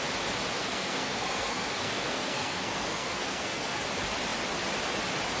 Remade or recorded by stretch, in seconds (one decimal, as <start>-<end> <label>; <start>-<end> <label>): 0.0-0.6 recorded; 0.6-3.8 remade; 3.8-5.4 recorded